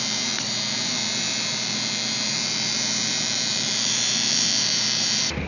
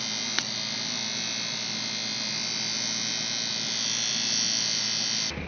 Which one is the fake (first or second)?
first